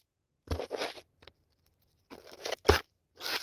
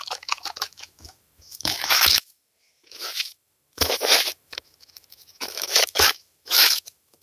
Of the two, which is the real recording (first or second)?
first